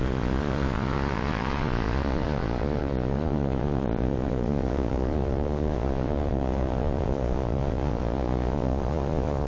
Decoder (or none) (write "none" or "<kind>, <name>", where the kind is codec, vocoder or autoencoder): vocoder, Vocos